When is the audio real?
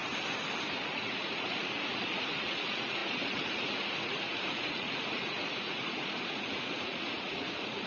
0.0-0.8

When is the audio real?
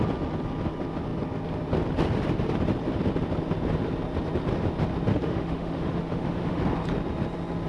0.0-5.1; 6.6-7.7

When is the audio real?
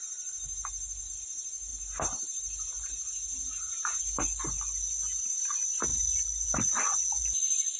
0.0-7.8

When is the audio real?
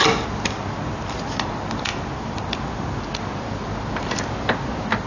0.0-5.1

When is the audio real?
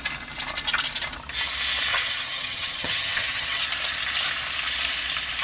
0.0-1.9; 3.6-5.4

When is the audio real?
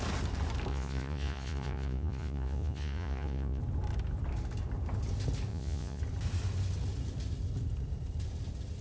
0.0-0.7; 3.6-5.5; 6.0-8.8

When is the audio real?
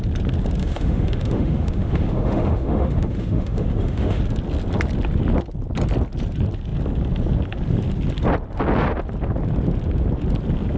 0.0-0.6; 4.2-10.8